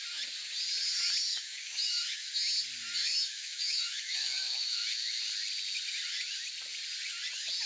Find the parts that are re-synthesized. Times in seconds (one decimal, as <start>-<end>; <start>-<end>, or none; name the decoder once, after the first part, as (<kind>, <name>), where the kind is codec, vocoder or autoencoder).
1.3-2.3 (autoencoder, DAC-VAE); 3.0-5.2